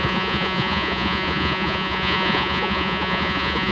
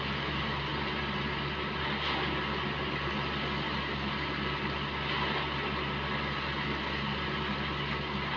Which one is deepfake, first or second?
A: first